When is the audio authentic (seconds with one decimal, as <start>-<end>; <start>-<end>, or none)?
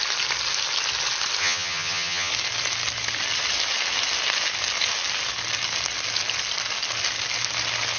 0.0-1.4; 2.3-8.0